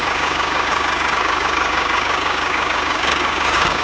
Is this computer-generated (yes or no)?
yes